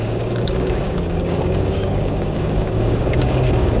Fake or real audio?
fake